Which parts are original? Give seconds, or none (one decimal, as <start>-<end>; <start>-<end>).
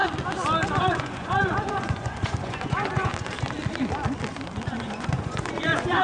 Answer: 0.0-0.8; 3.1-4.8